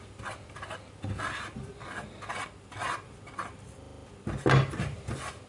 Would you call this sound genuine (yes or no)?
yes